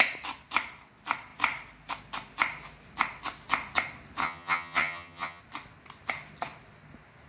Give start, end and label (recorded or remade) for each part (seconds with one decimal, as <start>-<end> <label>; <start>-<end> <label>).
0.0-4.2 recorded; 4.2-5.4 remade; 5.4-7.3 recorded

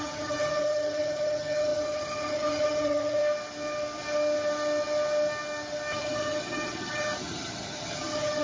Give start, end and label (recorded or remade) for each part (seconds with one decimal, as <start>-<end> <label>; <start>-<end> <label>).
0.0-3.2 remade; 3.2-6.0 recorded; 6.0-8.4 remade

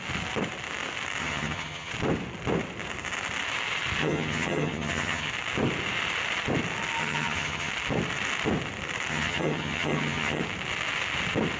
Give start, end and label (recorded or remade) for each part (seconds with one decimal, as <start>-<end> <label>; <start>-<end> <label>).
0.0-1.2 recorded; 1.2-1.9 remade; 1.9-4.0 recorded; 4.0-5.3 remade; 5.3-7.0 recorded; 7.0-7.7 remade; 7.7-9.1 recorded; 9.1-10.4 remade; 10.4-11.6 recorded

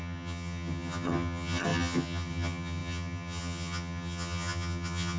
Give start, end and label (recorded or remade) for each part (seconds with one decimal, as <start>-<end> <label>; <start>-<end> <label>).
0.0-5.2 remade

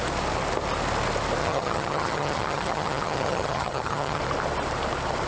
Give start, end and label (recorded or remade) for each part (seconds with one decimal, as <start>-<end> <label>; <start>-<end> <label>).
0.0-1.4 recorded; 1.4-4.2 remade; 4.2-5.3 recorded

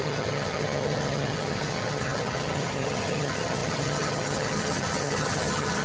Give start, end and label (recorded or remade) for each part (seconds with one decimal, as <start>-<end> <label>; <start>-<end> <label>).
0.0-5.8 remade

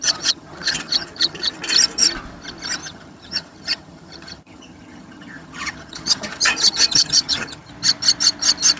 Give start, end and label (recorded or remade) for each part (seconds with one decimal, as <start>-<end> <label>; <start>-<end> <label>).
0.0-1.6 remade; 1.6-2.8 recorded; 2.8-7.7 remade; 7.7-8.8 recorded